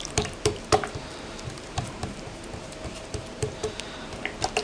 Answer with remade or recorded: remade